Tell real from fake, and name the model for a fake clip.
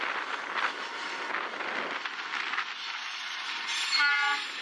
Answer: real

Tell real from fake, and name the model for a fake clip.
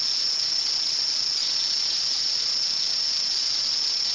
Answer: fake, vocoder, Vocos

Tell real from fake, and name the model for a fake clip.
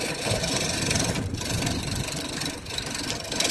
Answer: real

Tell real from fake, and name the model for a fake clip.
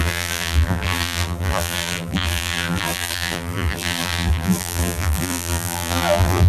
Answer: fake, vocoder, BigVGAN v2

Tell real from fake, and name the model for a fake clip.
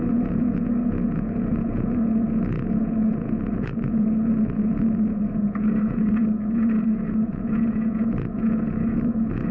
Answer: fake, vocoder, Vocos